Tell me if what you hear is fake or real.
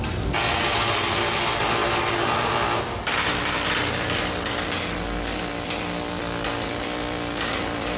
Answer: real